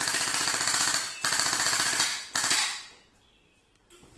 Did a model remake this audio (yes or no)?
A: no